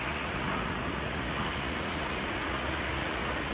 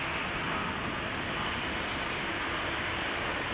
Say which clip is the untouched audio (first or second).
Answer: second